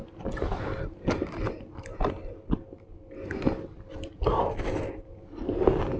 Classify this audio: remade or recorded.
recorded